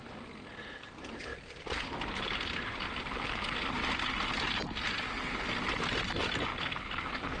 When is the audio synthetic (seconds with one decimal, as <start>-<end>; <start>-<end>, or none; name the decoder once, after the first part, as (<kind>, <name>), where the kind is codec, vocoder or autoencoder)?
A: none